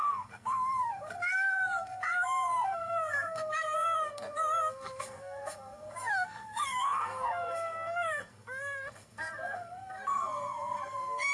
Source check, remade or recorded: remade